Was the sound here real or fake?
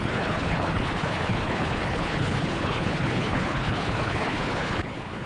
fake